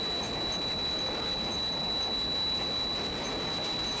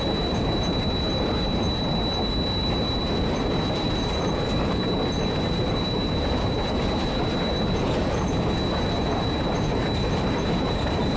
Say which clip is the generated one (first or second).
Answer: second